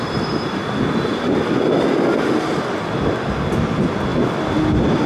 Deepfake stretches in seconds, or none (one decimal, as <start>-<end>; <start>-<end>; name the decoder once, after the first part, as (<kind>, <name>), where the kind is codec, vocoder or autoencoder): 1.1-1.9 (vocoder, BigVGAN v2)